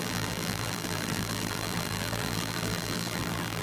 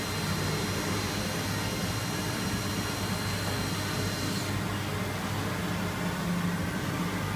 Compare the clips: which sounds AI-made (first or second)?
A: first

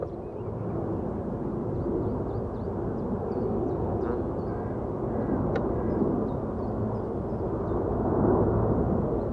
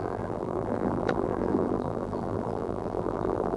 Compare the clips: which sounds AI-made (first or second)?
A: second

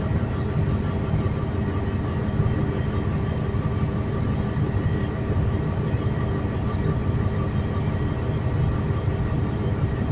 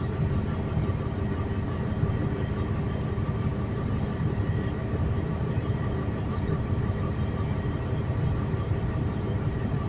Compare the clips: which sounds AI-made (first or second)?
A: second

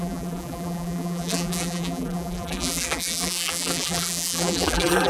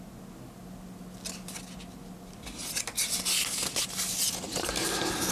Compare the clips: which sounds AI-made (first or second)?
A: first